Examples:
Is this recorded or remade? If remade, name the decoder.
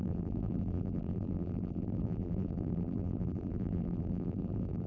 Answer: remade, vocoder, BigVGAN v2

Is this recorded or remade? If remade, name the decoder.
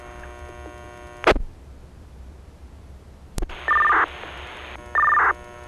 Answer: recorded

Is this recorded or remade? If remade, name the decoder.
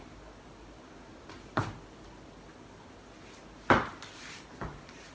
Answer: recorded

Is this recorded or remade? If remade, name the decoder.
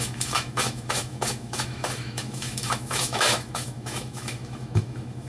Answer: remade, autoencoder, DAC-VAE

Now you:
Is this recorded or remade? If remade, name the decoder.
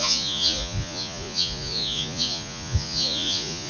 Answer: remade, vocoder, Vocos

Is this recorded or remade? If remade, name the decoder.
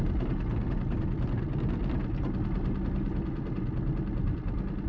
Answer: recorded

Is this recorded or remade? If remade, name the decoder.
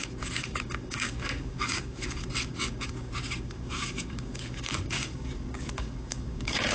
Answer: remade, codec, DAC